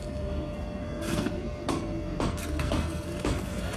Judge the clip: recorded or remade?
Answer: remade